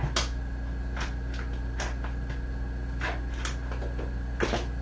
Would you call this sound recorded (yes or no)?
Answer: yes